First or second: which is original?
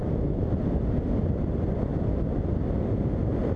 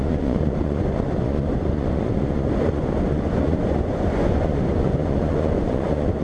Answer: first